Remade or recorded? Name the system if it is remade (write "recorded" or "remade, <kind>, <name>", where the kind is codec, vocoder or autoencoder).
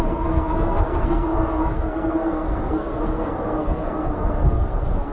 remade, codec, SNAC